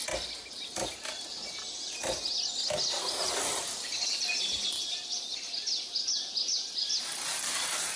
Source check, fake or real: real